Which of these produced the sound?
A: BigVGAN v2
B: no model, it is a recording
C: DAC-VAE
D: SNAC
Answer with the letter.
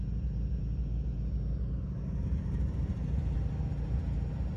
B